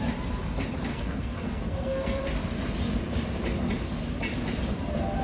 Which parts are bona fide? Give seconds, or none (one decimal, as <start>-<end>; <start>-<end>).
0.0-0.9; 2.2-5.2